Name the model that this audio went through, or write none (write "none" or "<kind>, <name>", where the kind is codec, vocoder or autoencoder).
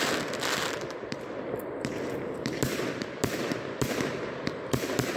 vocoder, BigVGAN v2